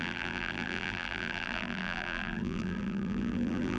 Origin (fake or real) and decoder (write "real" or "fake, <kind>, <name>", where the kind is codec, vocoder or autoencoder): fake, vocoder, BigVGAN v2